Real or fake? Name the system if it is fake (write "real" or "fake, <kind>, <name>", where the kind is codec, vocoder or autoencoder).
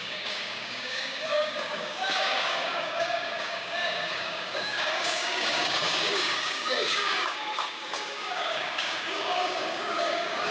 fake, codec, DAC